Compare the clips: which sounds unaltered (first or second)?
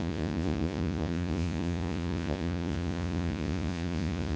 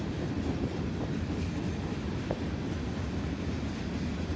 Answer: second